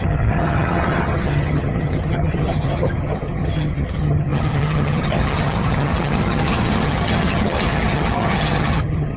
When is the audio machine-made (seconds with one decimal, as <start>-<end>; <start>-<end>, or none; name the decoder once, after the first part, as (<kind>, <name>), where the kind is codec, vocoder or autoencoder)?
0.0-9.2 (vocoder, HiFi-GAN)